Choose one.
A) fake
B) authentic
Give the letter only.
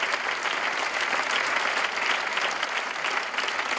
B